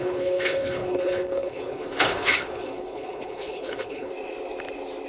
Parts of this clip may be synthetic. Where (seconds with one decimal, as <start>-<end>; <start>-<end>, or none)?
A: 0.0-4.1